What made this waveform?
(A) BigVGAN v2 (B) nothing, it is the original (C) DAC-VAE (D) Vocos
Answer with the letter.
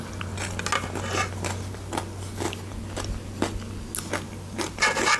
B